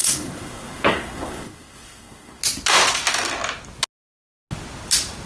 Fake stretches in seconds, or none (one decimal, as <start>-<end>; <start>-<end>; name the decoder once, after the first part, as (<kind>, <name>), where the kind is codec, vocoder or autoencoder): 0.0-2.4 (codec, SNAC)